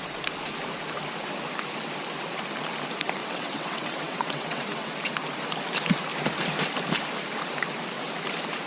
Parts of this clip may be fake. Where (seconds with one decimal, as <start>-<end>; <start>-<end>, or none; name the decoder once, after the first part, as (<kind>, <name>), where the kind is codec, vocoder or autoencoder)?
3.2-4.9 (vocoder, WaveNeXt)